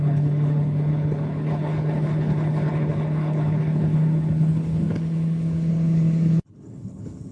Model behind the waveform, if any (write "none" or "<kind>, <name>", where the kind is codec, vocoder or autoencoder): codec, HILCodec